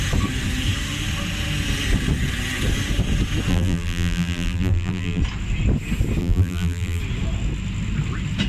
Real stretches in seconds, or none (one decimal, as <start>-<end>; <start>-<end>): 0.0-3.5; 5.2-6.2; 7.0-8.5